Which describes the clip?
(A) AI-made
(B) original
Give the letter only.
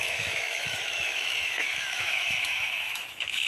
A